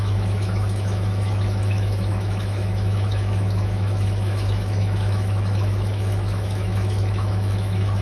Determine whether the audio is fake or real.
fake